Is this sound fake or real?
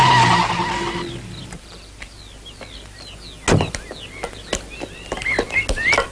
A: real